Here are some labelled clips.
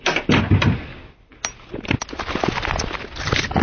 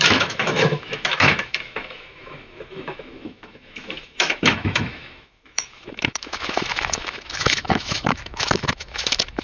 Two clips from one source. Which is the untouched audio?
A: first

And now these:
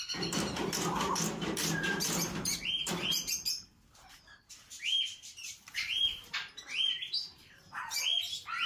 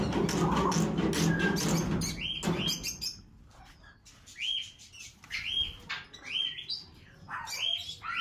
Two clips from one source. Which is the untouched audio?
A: second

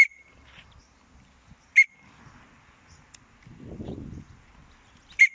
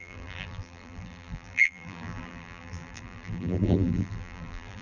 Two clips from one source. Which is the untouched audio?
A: first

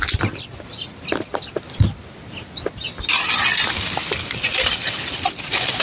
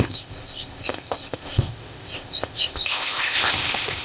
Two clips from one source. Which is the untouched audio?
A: first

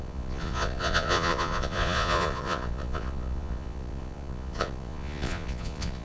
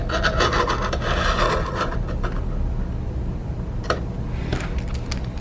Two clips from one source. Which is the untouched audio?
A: second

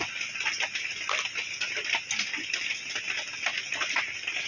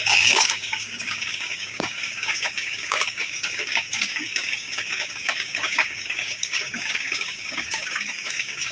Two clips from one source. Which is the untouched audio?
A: first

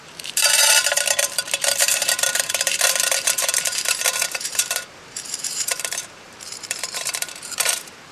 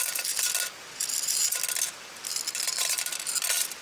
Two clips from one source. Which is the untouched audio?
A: second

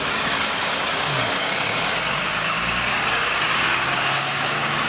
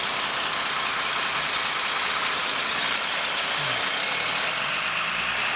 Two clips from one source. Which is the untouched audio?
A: second